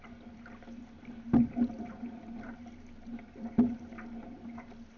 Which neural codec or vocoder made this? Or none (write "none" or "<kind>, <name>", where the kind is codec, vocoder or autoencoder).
none